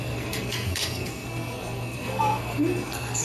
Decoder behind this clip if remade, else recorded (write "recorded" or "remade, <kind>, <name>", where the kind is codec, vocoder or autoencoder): remade, codec, SNAC